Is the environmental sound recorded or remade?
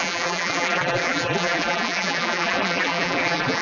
remade